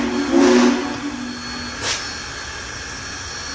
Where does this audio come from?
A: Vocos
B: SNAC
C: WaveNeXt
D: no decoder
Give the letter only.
D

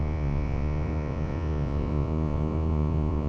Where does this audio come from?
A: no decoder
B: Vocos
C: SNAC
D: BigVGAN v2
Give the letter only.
B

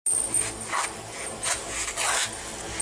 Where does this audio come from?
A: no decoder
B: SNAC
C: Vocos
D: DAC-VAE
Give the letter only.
A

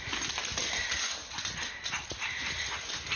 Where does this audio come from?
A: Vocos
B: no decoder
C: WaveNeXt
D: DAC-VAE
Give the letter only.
B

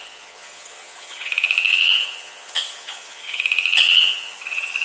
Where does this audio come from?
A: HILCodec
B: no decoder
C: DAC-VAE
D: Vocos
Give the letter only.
D